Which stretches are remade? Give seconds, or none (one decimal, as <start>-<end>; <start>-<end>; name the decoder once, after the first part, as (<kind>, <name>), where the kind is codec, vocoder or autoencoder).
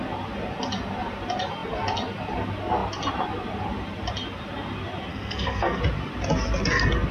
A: 5.1-5.8 (codec, SNAC)